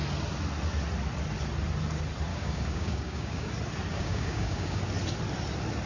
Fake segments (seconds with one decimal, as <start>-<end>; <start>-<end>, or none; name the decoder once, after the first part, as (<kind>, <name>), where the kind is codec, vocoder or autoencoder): 2.3-3.5 (codec, DAC); 3.9-4.8